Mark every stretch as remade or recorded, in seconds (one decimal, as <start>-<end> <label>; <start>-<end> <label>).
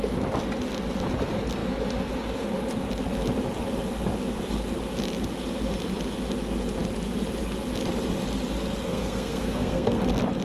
0.0-8.9 recorded; 8.9-10.0 remade; 10.0-10.4 recorded